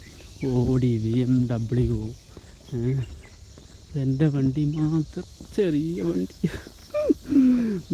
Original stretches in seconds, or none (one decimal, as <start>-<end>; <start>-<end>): 1.4-5.1; 6.8-7.4